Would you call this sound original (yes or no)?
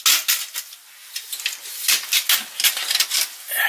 yes